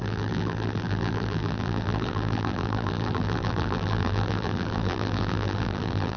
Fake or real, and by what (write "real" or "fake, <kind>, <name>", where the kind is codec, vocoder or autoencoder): fake, vocoder, BigVGAN v2